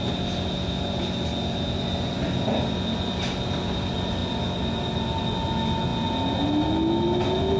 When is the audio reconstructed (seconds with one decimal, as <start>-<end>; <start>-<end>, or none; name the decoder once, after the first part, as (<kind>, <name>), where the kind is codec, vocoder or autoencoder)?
none